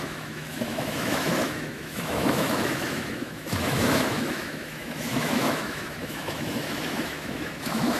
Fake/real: fake